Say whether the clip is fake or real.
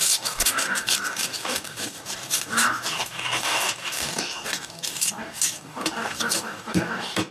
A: fake